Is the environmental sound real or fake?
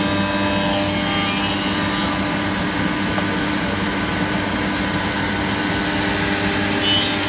real